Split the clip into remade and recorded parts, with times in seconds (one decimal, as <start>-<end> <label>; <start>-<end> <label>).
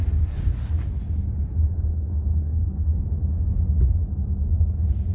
0.0-1.9 recorded; 1.9-3.0 remade; 3.0-5.1 recorded